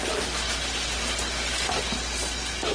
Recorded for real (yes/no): yes